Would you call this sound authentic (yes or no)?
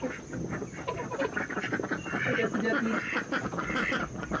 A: yes